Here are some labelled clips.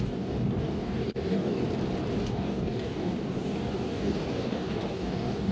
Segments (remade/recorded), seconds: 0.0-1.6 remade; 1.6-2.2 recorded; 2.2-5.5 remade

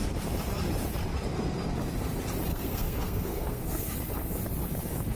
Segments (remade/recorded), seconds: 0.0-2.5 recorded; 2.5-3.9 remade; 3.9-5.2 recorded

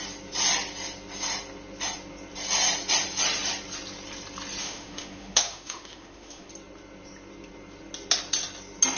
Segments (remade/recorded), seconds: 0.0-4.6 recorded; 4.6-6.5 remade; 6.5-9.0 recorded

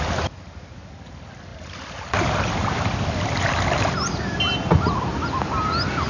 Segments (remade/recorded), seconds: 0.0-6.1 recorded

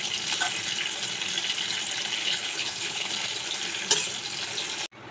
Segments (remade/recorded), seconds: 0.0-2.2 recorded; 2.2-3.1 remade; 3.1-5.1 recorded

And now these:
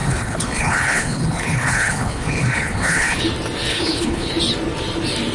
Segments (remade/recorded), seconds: 0.0-3.2 remade; 3.2-3.7 recorded; 3.7-4.3 remade; 4.3-5.3 recorded